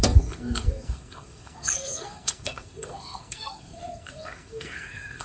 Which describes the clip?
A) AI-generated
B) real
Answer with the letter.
A